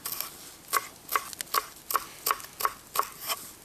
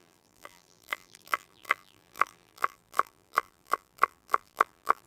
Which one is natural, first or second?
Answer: first